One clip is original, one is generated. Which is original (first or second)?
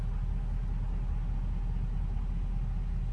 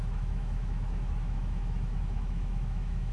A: first